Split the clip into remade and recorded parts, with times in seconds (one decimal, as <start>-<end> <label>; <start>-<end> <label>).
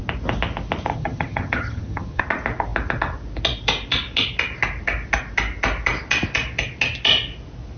0.0-0.9 recorded; 0.9-2.2 remade; 2.2-7.8 recorded